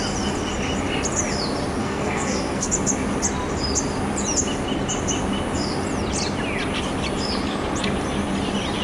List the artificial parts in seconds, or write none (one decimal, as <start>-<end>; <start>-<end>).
1.8-2.7